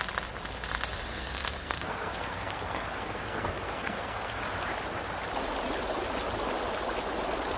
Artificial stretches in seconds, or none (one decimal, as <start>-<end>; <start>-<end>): 1.1-4.4